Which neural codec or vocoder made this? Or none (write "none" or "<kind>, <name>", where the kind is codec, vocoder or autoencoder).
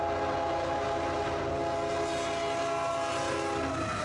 none